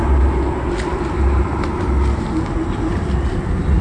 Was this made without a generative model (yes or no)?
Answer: yes